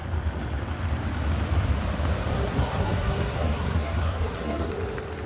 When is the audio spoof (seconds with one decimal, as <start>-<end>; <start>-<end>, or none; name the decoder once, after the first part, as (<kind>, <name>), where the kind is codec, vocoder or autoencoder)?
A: 2.3-4.7 (codec, SNAC)